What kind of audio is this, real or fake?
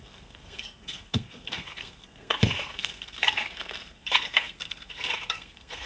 fake